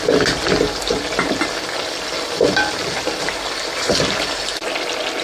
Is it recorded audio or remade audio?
recorded